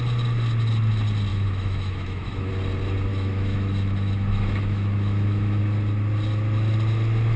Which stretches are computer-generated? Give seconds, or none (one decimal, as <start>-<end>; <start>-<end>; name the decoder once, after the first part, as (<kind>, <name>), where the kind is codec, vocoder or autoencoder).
1.3-2.5 (autoencoder, DAC-VAE); 3.1-5.6